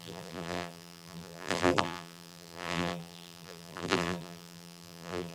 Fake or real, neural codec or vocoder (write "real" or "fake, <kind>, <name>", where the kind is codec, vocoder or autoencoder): fake, vocoder, BigVGAN v2